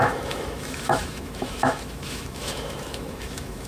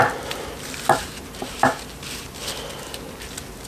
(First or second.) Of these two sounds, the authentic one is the second